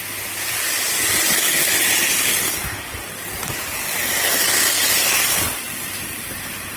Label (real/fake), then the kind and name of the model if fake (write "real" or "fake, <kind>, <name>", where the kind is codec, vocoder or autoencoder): real